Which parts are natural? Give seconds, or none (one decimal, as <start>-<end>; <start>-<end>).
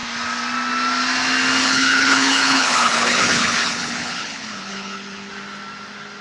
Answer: 0.0-1.6; 5.3-6.2